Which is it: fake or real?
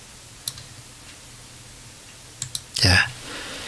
real